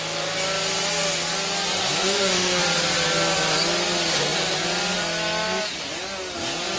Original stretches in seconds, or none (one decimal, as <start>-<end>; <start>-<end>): 0.0-2.0; 2.6-6.8